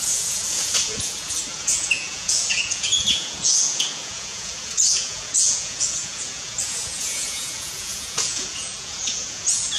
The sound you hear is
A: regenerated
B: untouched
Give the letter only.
A